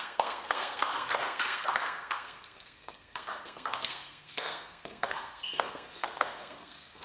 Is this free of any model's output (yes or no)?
no